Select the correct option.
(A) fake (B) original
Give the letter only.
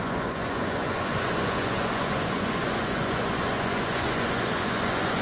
A